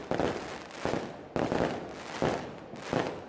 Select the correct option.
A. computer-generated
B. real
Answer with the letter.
B